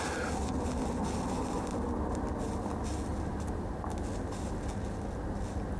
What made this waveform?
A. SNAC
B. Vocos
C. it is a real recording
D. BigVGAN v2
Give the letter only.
C